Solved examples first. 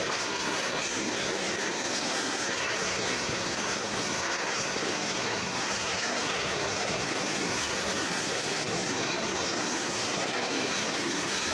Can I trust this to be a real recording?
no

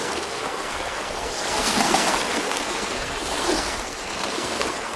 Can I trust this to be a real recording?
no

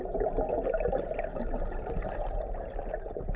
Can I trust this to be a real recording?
yes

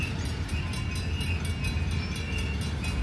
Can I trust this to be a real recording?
yes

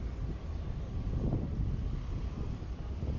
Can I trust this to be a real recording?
yes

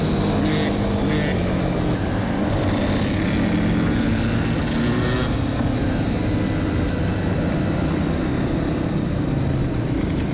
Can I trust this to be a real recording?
yes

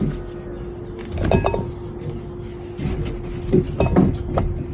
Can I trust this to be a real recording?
yes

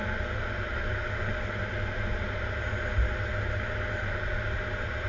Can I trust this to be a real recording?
yes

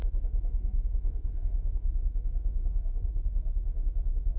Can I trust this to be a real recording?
no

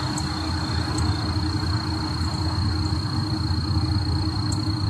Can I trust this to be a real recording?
yes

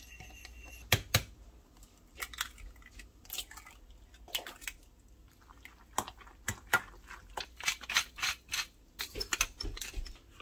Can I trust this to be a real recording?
yes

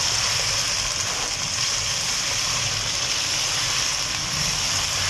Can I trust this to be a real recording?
yes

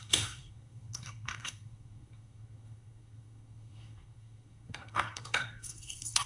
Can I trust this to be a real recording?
no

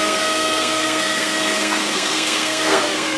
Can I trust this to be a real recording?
no